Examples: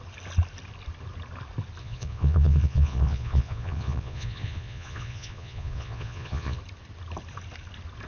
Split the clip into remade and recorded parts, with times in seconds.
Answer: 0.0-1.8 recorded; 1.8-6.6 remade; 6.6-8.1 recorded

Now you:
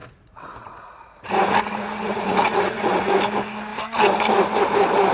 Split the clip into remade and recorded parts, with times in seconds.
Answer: 0.0-3.1 remade; 3.1-5.1 recorded

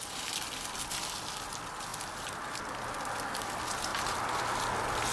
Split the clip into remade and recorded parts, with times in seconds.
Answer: 0.0-5.1 recorded